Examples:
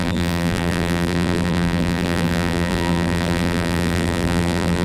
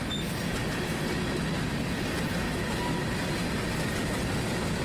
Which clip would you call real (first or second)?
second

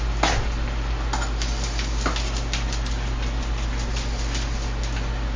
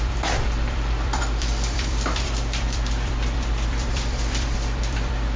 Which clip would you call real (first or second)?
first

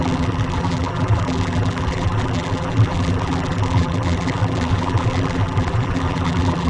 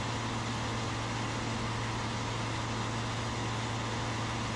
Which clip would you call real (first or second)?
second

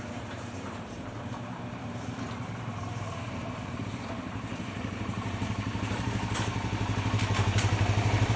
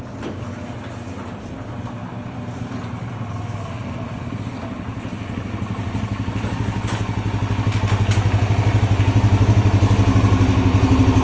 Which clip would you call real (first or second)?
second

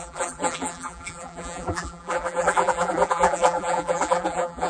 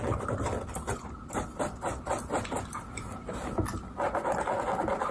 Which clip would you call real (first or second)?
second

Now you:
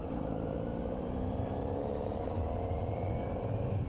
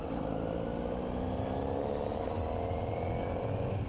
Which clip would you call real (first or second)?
second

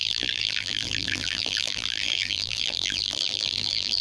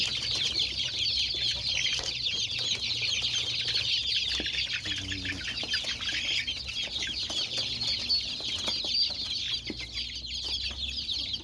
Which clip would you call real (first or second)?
second